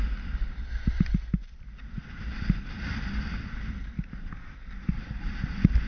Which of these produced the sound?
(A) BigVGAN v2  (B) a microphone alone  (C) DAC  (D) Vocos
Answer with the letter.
B